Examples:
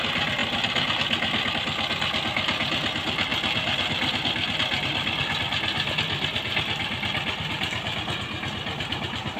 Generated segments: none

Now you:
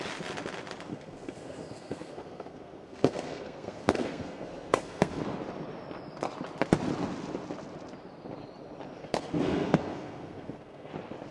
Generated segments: 0.9-5.2 (codec, SNAC); 9.0-10.9

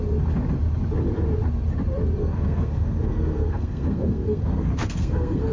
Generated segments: 2.2-5.5 (codec, SNAC)

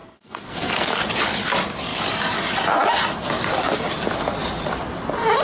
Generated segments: 0.0-0.9 (codec, SNAC)

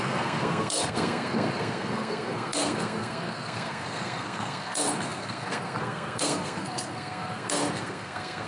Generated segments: 0.0-8.5 (codec, SNAC)

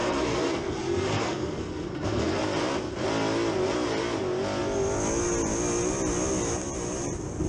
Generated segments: 0.0-2.4 (codec, SNAC)

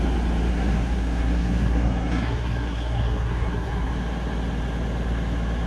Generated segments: 0.5-3.9 (codec, SNAC)

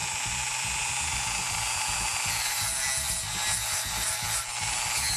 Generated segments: none